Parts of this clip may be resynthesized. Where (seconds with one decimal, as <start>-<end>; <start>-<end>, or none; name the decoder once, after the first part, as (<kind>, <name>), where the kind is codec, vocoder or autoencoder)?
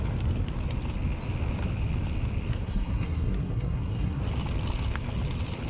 2.5-4.2 (codec, SNAC)